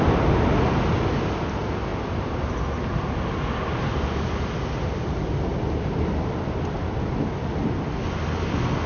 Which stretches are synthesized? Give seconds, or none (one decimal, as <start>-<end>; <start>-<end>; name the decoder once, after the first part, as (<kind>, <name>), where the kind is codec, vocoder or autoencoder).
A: none

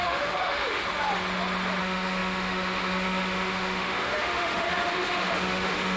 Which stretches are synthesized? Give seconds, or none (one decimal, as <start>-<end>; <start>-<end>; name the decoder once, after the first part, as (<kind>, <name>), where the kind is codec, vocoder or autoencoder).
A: 0.0-0.8 (autoencoder, DAC-VAE); 1.8-6.0

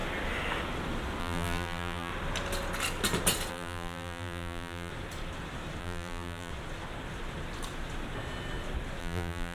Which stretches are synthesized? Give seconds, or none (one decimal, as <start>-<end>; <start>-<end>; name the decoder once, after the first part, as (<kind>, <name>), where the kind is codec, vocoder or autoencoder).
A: 1.2-2.1 (vocoder, BigVGAN v2); 3.5-4.9; 5.8-6.5; 9.0-9.5

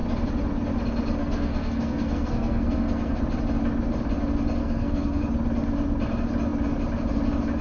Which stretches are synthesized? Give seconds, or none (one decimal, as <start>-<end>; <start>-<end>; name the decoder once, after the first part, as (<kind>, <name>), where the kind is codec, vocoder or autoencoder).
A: 1.2-3.2 (codec, SNAC); 4.6-5.2

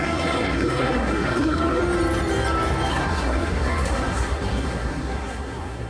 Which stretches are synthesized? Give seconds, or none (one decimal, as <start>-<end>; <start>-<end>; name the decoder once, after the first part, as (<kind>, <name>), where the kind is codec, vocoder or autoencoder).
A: 0.0-1.8 (codec, SNAC); 2.9-5.9